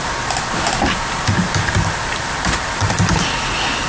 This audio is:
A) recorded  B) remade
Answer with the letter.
A